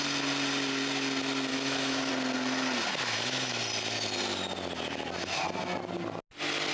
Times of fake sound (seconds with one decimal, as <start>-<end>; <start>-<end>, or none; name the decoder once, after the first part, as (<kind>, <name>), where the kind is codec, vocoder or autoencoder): 1.5-2.1 (autoencoder, DAC-VAE); 2.9-3.6